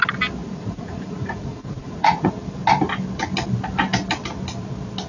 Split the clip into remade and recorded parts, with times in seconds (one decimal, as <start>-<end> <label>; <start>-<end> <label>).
0.0-0.4 recorded; 0.4-2.3 remade; 2.3-5.1 recorded